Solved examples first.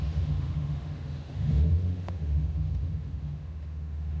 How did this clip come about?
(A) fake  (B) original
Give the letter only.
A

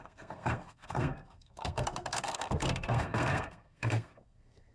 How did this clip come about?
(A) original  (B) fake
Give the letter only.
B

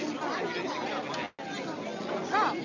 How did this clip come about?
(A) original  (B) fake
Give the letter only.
A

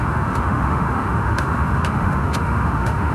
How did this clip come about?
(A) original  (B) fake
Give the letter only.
B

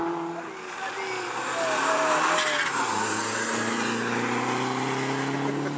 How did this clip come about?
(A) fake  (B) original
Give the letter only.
B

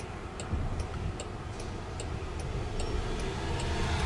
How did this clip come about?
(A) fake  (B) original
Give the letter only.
B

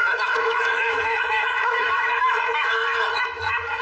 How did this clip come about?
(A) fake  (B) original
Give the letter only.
A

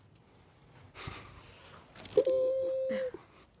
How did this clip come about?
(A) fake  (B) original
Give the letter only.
B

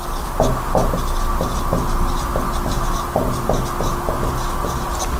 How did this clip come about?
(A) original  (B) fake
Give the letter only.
A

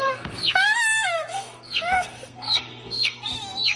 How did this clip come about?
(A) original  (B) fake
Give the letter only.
B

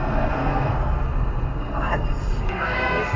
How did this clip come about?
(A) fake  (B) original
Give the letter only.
A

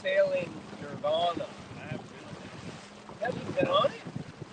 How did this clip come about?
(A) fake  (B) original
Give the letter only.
B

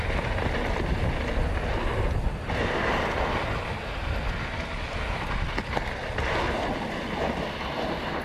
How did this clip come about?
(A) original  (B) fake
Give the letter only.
A